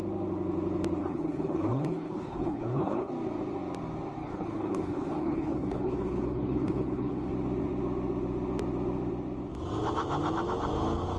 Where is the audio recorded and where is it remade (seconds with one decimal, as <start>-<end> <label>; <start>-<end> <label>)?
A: 0.0-1.0 recorded; 1.0-3.1 remade; 3.1-4.2 recorded; 4.2-7.3 remade; 7.3-11.2 recorded